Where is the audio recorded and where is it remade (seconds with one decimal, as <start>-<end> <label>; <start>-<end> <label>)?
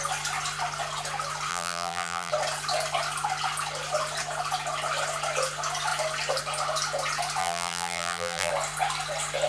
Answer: 0.0-1.5 recorded; 1.5-2.3 remade; 2.3-7.4 recorded; 7.4-8.5 remade; 8.5-9.5 recorded